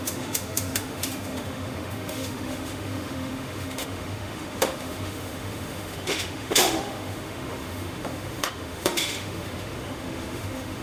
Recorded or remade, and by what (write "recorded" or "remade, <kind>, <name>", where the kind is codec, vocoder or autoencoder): remade, autoencoder, DAC-VAE